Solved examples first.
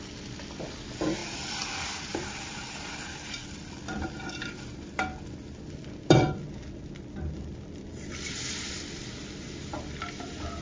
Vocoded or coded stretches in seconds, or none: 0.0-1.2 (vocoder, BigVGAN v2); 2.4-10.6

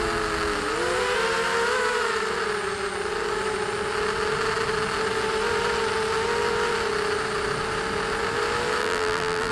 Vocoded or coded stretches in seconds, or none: 8.8-9.5 (vocoder, BigVGAN v2)

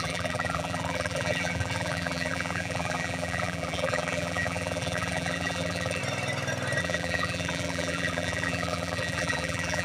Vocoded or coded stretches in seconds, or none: 0.0-6.0 (vocoder, BigVGAN v2); 6.8-9.8

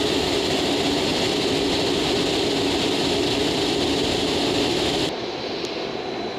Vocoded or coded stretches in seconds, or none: none